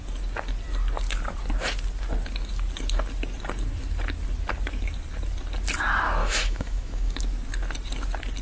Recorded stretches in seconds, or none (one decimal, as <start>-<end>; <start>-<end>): 0.0-6.2; 7.2-8.4